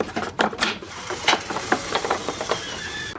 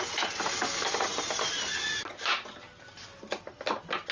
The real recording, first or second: second